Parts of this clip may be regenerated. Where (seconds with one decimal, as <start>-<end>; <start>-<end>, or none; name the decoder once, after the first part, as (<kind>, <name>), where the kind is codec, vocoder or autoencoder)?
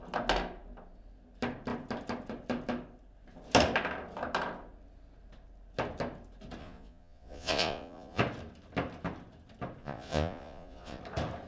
6.6-8.2 (vocoder, Vocos); 9.8-11.0